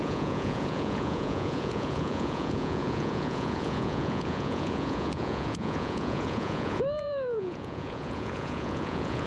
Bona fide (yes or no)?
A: no